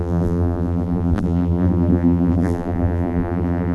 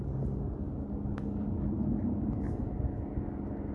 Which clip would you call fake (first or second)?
first